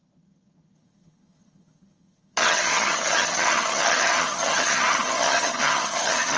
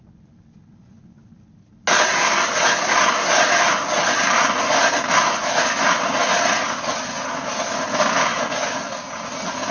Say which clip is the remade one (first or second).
first